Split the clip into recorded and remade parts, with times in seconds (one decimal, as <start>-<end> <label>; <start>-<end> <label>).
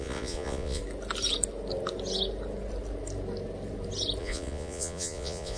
0.0-0.8 remade; 0.8-4.2 recorded; 4.2-5.6 remade